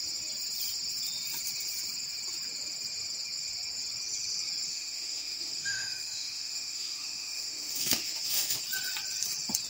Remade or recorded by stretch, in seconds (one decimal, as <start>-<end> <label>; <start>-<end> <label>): 0.0-4.7 recorded; 4.7-8.6 remade; 8.6-9.7 recorded